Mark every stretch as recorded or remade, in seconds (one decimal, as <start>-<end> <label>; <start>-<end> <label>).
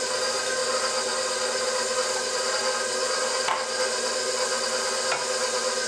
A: 0.0-5.9 recorded